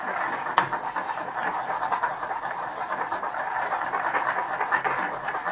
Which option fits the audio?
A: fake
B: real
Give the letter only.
B